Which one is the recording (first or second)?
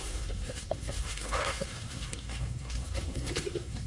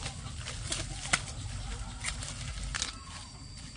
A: second